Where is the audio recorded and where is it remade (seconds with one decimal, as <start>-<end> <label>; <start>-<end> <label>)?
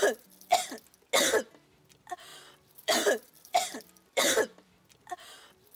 0.0-2.3 recorded; 2.3-4.7 remade; 4.7-5.8 recorded